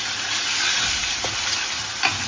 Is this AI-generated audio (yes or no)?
no